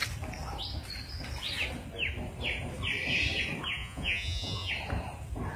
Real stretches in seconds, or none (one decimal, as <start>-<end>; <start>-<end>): 0.0-3.8; 4.7-5.6